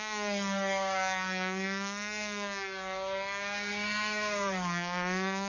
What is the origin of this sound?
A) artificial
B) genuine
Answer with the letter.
A